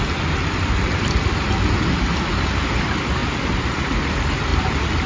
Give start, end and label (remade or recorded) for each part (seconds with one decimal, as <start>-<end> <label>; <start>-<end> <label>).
0.0-3.2 recorded; 3.2-3.9 remade; 3.9-4.5 recorded; 4.5-5.1 remade